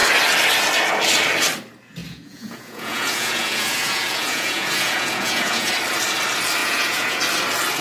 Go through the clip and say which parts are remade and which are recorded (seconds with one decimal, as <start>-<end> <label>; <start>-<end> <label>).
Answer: 0.0-2.0 recorded; 2.0-5.7 remade; 5.7-6.6 recorded; 6.6-7.2 remade; 7.2-7.8 recorded